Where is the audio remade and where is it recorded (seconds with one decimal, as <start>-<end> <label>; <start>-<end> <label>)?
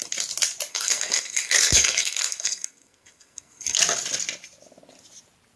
0.0-0.7 recorded; 0.7-3.8 remade; 3.8-5.6 recorded